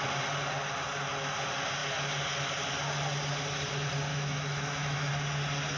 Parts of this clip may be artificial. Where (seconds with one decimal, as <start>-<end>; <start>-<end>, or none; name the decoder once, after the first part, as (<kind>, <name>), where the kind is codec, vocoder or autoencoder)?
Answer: 4.1-5.1 (autoencoder, DAC-VAE)